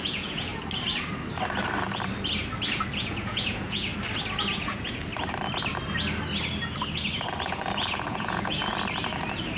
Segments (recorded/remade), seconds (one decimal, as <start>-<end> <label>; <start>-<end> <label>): 0.0-0.5 remade; 0.5-2.9 recorded; 2.9-3.9 remade; 3.9-4.6 recorded; 4.6-5.0 remade; 5.0-7.5 recorded; 7.5-8.7 remade; 8.7-9.6 recorded